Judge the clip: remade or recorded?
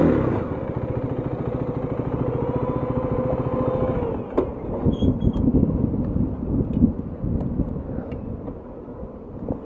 recorded